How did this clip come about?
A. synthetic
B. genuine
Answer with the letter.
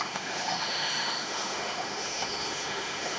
A